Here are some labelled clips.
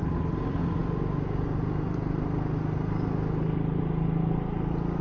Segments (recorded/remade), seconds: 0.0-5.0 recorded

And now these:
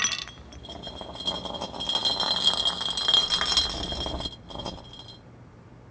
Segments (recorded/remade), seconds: 0.0-5.9 recorded

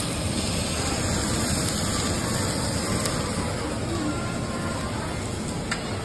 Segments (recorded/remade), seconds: 0.0-6.0 recorded

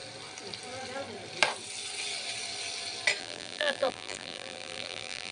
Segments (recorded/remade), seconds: 0.0-3.2 recorded; 3.2-5.3 remade

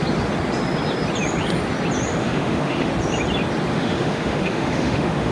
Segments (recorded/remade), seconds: 0.0-2.2 recorded; 2.2-2.9 remade; 2.9-3.7 recorded; 3.7-5.3 remade

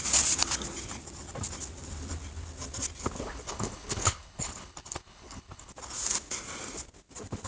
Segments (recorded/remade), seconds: 0.0-3.2 recorded; 3.2-5.7 remade; 5.7-7.5 recorded